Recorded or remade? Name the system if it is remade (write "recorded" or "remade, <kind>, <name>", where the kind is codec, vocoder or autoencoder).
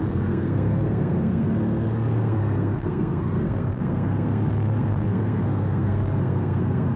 remade, codec, SNAC